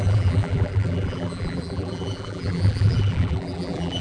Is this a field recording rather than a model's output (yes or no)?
no